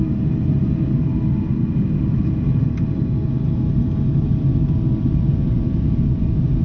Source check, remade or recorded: recorded